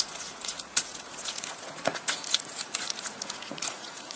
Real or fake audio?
fake